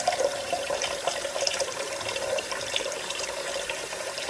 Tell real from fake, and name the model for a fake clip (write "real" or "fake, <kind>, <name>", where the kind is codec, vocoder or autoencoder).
fake, vocoder, BigVGAN v2